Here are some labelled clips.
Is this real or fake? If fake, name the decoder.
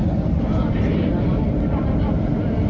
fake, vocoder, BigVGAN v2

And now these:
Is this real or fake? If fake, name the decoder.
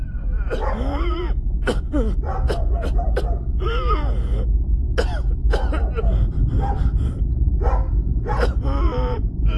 real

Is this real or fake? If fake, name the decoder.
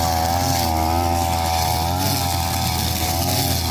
real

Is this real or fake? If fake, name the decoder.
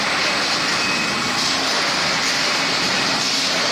real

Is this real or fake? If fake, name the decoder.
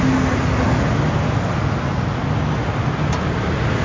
real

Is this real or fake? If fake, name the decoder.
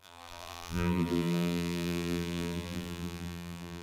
fake, vocoder, BigVGAN v2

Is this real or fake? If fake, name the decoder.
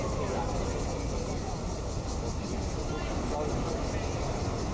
real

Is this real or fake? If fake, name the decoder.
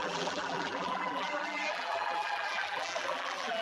fake, vocoder, BigVGAN v2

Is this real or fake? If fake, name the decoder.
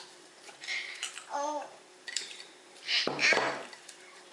fake, vocoder, BigVGAN v2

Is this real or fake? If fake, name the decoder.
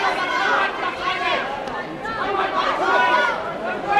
real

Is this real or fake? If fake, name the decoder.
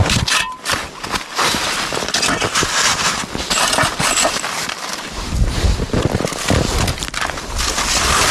fake, vocoder, BigVGAN v2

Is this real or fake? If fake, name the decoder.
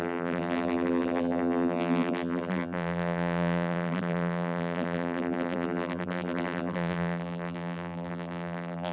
fake, vocoder, BigVGAN v2